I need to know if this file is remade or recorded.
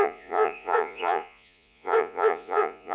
remade